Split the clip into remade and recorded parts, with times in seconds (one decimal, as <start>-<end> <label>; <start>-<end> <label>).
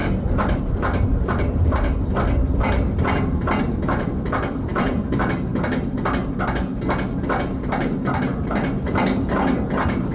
0.0-6.7 remade; 6.7-7.4 recorded; 7.4-10.1 remade